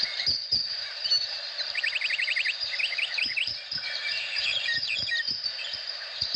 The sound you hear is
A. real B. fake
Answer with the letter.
B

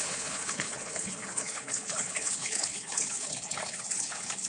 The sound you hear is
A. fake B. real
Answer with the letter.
A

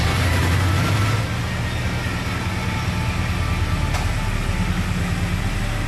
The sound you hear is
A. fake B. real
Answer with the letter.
B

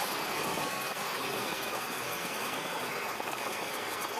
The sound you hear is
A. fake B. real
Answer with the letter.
A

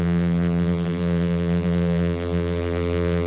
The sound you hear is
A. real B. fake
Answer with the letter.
B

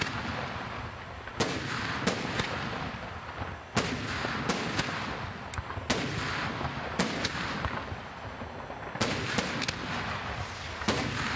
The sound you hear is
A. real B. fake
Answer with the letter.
A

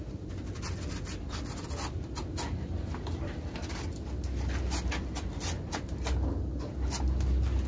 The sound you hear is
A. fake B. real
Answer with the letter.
B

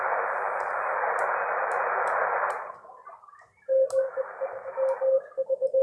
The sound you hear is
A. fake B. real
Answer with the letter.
B